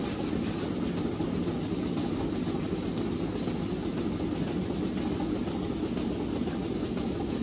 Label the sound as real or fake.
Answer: real